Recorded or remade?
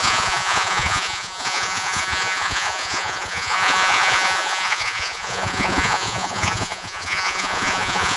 remade